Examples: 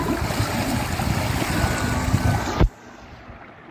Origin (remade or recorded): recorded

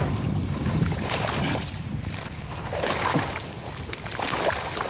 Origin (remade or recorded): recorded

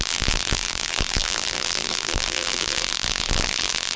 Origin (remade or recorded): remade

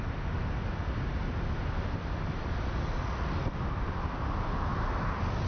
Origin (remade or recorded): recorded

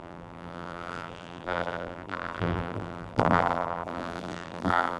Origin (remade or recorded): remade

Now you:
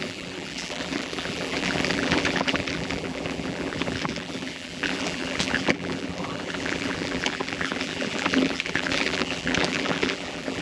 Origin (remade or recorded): remade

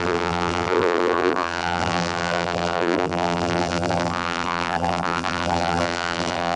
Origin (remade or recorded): remade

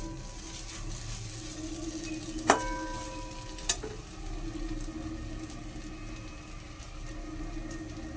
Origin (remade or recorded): recorded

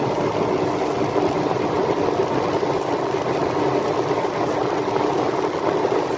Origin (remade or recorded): recorded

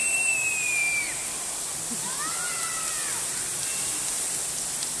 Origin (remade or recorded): recorded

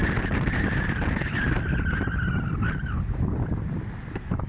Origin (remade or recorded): recorded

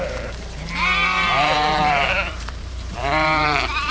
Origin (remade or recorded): remade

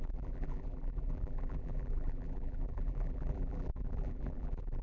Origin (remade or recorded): remade